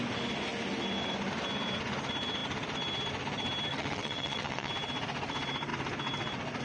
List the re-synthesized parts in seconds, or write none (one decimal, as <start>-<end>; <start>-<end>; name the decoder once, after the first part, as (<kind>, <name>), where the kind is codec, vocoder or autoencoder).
3.7-4.7 (vocoder, WaveNeXt)

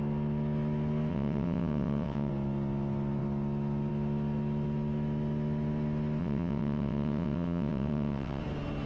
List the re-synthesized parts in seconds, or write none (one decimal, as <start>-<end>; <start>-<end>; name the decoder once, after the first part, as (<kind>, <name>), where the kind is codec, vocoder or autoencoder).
1.1-2.3 (vocoder, WaveNeXt); 6.2-8.4

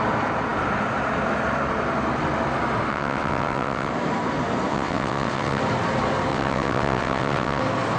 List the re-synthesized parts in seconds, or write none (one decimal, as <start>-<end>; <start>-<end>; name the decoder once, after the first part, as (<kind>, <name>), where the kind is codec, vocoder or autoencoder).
2.9-3.9 (vocoder, WaveNeXt); 4.7-5.6; 6.3-7.6

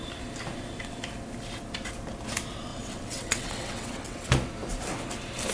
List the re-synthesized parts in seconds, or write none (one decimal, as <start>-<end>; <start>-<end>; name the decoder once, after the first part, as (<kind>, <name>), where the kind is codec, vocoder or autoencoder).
2.7-4.3 (vocoder, WaveNeXt)

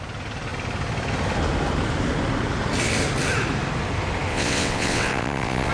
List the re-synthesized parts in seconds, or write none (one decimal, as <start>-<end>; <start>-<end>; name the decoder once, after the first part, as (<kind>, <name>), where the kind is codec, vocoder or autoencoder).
4.3-5.7 (vocoder, WaveNeXt)

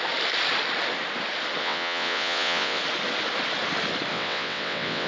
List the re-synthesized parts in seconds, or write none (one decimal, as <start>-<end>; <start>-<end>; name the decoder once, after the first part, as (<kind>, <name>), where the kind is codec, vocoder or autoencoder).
1.6-2.8 (vocoder, WaveNeXt); 4.1-5.1

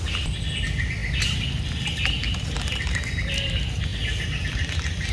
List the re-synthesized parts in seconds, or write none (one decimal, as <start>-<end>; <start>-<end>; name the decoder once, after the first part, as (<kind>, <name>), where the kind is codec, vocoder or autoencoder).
none

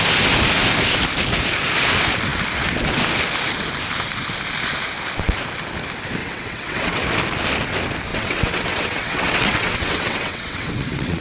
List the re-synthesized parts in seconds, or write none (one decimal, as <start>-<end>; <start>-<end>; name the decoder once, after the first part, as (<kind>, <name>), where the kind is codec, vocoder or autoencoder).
6.2-7.1 (vocoder, WaveNeXt); 8.1-11.2